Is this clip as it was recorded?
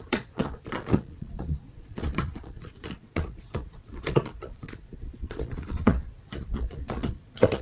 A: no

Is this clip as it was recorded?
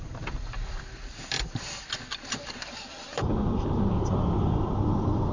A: no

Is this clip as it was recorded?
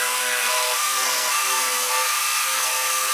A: no